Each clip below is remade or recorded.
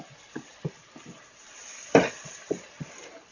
recorded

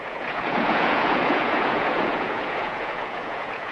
remade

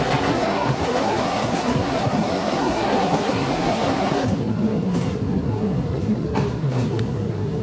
remade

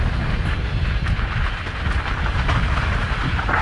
recorded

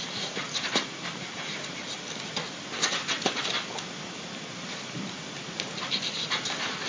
recorded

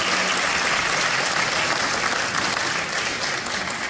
recorded